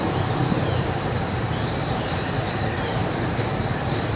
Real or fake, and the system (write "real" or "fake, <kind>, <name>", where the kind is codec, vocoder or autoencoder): fake, vocoder, BigVGAN v2